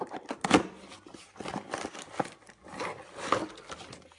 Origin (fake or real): real